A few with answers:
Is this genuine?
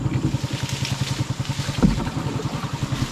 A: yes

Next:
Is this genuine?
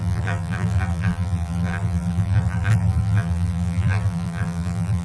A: no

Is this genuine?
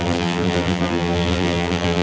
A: no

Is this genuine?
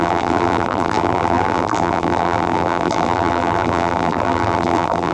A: no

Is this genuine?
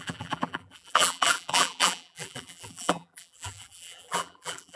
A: no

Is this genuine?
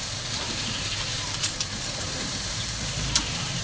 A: no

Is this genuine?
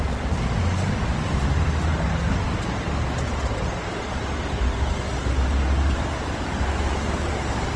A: yes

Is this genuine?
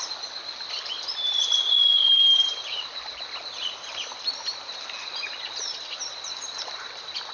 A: no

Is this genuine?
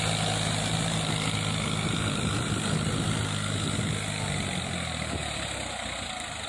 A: yes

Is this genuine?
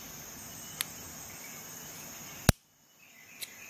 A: yes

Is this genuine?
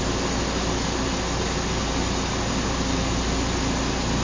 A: yes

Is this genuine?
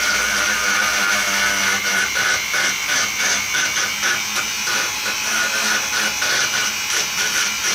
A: yes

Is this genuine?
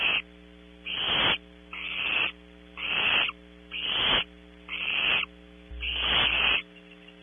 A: yes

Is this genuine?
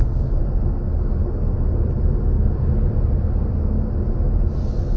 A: yes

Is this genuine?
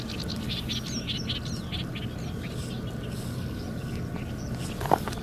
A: yes